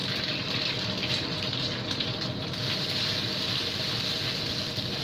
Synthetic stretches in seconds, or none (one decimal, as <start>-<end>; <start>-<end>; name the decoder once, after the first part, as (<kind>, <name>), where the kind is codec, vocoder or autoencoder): none